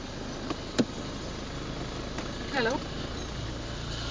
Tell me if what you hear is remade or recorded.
recorded